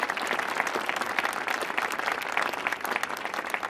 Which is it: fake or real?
real